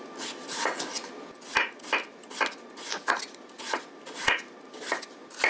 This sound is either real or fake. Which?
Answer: real